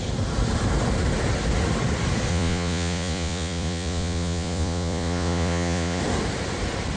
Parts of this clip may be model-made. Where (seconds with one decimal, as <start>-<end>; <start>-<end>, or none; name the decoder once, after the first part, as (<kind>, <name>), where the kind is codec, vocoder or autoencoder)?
2.3-6.0 (vocoder, Vocos)